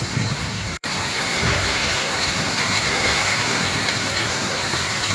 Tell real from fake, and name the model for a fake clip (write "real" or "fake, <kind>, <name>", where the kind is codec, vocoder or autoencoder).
fake, codec, SNAC